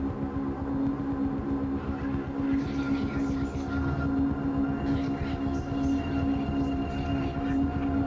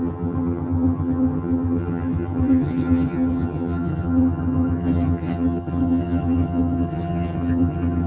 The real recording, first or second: first